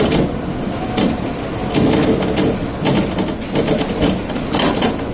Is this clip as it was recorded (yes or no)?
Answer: yes